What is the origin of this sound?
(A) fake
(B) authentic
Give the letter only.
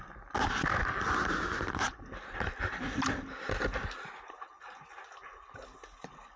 B